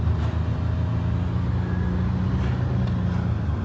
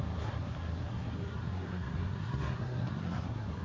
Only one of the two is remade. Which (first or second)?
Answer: second